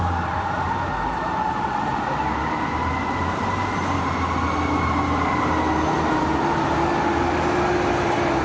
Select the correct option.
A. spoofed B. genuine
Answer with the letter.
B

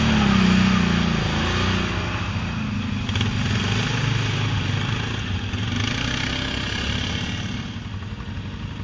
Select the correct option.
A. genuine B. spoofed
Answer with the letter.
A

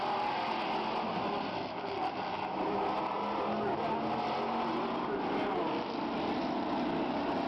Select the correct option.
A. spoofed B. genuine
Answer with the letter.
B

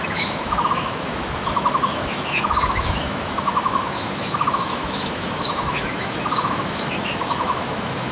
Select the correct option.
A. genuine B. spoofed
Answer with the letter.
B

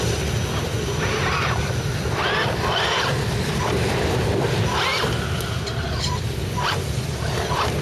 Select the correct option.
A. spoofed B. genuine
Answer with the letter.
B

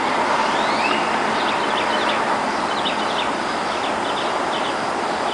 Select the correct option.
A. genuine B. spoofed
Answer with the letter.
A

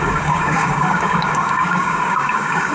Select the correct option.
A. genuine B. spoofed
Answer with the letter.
B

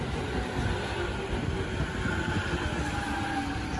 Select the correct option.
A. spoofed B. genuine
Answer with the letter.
B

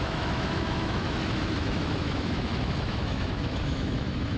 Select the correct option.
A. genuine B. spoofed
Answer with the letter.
B